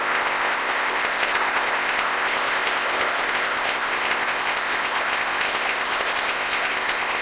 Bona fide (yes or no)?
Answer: no